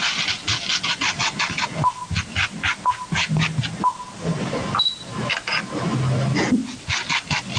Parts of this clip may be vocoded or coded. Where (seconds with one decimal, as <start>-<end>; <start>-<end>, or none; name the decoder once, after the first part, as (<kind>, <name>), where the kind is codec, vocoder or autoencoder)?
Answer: 0.0-2.0 (vocoder, BigVGAN v2); 3.8-5.1; 7.1-7.6